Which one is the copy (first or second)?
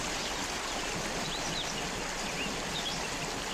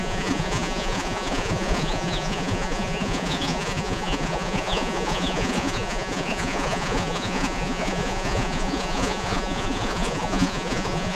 second